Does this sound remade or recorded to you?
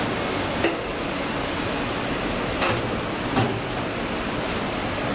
recorded